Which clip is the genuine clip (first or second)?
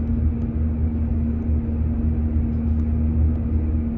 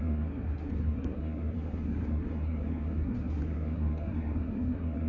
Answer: first